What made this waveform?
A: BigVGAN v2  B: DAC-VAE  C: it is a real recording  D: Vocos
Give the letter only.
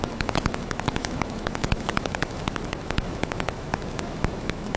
B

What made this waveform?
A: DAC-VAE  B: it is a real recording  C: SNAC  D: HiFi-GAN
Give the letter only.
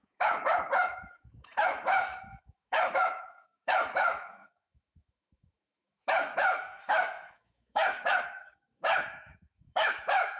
A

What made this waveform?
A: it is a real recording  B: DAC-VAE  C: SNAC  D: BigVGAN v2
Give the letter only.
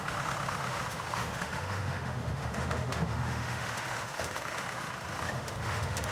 B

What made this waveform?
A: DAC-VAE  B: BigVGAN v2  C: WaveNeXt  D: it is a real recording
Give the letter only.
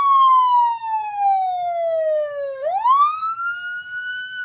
A